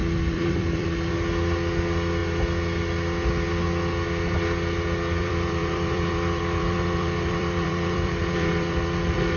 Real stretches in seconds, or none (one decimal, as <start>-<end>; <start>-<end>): 1.1-5.2

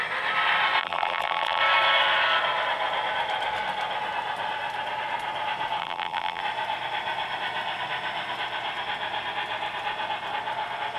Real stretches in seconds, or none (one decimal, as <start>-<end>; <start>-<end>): 0.0-0.8; 1.6-5.8; 6.4-11.0

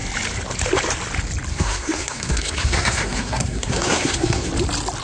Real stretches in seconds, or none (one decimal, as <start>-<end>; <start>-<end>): 0.0-1.5; 4.5-5.0

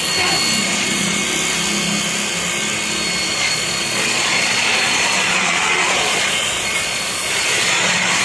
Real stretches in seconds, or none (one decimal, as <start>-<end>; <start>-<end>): 0.0-0.6; 1.2-3.3

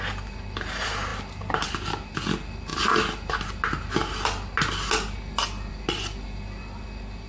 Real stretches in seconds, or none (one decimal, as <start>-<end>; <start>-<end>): 0.0-7.3

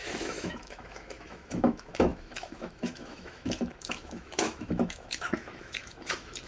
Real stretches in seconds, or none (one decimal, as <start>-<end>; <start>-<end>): none

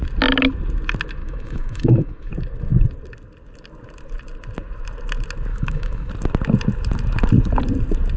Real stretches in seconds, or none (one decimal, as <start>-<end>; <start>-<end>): 0.0-1.2; 2.3-5.5; 6.1-8.2